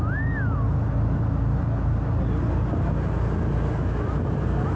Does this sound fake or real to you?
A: real